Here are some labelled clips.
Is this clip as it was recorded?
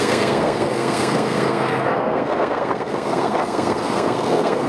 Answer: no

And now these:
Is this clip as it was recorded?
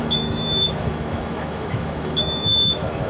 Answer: no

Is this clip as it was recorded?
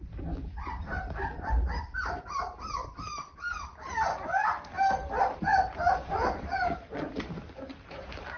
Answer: yes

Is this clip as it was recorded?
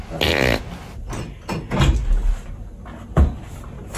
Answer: yes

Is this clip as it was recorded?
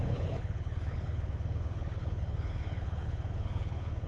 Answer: no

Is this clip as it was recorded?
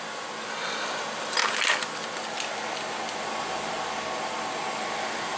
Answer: yes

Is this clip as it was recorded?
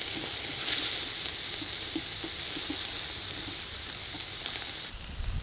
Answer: yes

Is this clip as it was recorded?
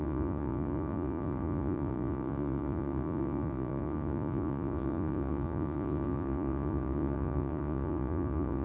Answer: no